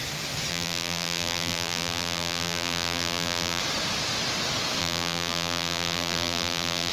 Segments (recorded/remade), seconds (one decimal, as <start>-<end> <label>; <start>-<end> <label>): 0.0-0.5 recorded; 0.5-3.6 remade; 3.6-4.8 recorded; 4.8-6.9 remade